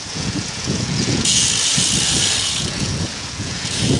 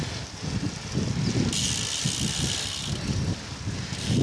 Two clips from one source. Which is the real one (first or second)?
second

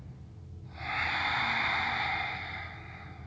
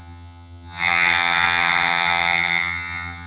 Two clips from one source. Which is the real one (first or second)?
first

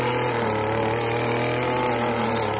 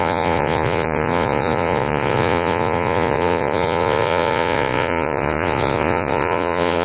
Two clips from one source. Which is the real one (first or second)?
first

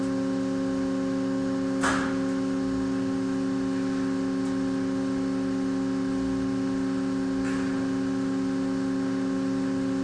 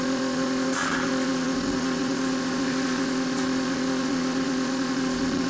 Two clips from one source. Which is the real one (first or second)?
first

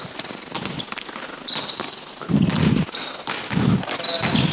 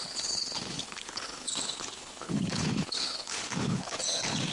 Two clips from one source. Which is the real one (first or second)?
first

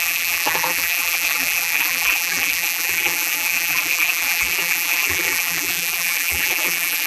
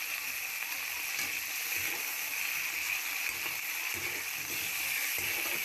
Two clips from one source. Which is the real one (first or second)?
second